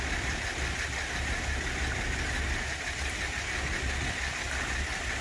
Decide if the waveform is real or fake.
real